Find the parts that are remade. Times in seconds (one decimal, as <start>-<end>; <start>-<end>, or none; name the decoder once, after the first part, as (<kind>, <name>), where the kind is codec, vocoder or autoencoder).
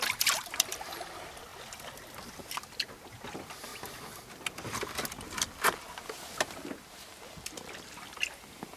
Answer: none